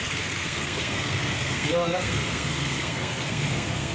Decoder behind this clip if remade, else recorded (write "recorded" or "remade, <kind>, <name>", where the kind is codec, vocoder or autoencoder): remade, codec, SNAC